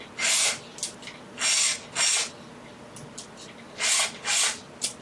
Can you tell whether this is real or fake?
real